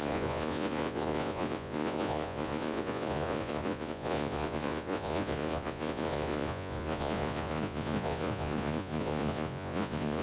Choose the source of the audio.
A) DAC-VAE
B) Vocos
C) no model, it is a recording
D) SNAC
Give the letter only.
B